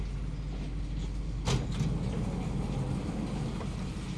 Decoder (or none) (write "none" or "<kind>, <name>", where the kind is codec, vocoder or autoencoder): none